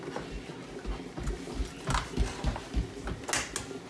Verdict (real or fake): real